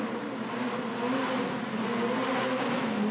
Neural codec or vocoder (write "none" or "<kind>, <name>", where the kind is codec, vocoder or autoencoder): none